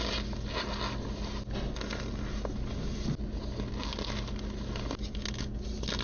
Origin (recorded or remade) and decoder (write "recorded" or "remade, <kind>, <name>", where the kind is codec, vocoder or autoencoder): recorded